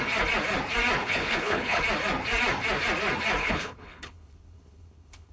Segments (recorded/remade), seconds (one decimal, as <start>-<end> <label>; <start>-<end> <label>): 0.0-1.0 recorded; 1.0-1.8 remade; 1.8-3.4 recorded; 3.4-5.3 remade